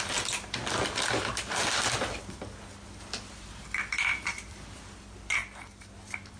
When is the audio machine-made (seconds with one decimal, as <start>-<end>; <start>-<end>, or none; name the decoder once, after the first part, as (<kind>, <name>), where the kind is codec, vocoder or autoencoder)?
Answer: none